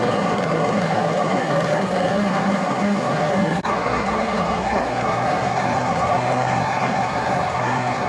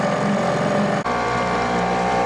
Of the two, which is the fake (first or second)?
first